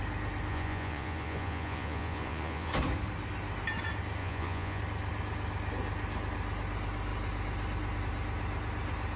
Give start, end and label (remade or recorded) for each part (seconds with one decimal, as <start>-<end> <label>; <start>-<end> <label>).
0.0-0.5 recorded; 0.5-2.7 remade; 2.7-4.2 recorded; 4.2-4.8 remade; 4.8-9.2 recorded